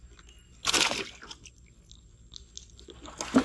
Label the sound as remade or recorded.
recorded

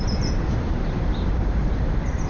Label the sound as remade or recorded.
remade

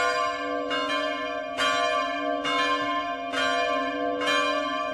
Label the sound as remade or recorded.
recorded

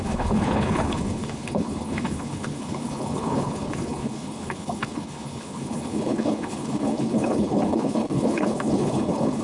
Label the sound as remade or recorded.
remade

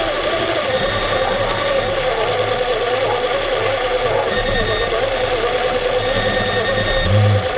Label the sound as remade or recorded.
recorded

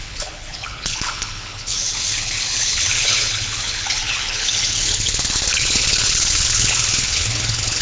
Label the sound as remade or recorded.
remade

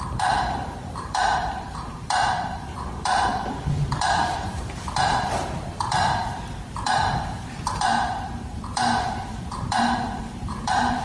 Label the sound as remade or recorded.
remade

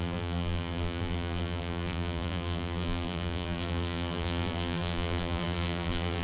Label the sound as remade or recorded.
remade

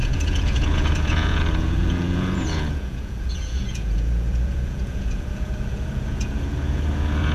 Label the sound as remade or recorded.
remade